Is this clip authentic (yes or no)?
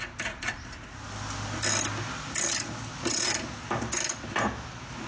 yes